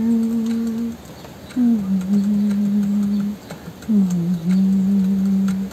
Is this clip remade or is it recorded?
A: recorded